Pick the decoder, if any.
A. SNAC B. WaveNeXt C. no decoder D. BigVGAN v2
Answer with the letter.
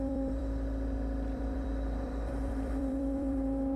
D